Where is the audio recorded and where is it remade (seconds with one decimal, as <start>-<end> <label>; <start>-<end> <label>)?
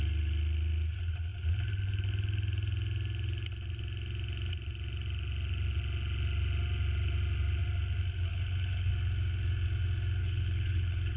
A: 0.0-8.3 recorded; 8.3-8.9 remade; 8.9-10.2 recorded; 10.2-11.2 remade